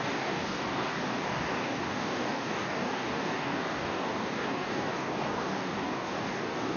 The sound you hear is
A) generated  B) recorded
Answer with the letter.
A